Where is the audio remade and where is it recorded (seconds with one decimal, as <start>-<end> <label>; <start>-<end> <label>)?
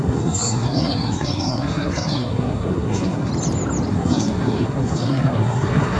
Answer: 0.0-3.3 remade; 3.3-3.9 recorded; 3.9-6.0 remade